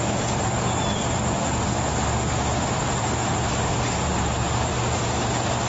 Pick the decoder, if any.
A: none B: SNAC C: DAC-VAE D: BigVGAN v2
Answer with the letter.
A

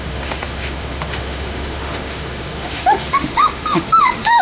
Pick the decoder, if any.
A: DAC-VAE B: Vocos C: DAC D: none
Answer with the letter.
A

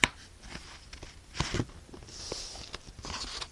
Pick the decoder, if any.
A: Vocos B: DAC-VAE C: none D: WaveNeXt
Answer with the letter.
C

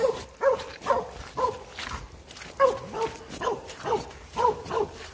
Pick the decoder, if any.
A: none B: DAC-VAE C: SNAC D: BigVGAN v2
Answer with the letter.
A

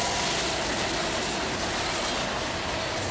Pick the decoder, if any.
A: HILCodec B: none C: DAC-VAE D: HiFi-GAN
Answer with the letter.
B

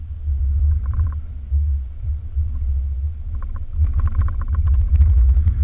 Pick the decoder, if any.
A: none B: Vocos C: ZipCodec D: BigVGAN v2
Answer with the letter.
D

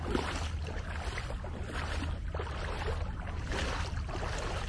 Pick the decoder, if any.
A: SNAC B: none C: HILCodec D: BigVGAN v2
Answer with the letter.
B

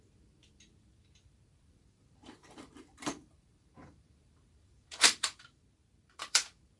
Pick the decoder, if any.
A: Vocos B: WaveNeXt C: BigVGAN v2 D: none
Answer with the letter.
C